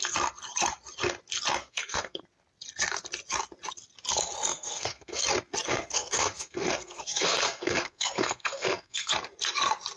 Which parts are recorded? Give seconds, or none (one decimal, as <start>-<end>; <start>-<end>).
0.0-1.6; 2.2-4.5; 5.2-5.7; 9.1-10.0